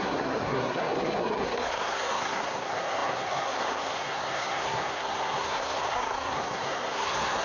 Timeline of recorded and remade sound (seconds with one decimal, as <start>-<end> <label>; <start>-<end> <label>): 0.0-7.4 remade